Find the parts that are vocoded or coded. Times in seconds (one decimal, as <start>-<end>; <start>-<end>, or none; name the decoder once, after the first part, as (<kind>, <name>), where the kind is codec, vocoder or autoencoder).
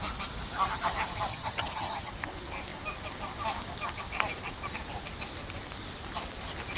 1.3-2.1 (vocoder, HiFi-GAN)